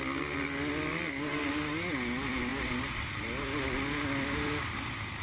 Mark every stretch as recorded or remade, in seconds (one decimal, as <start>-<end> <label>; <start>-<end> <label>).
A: 0.0-5.2 recorded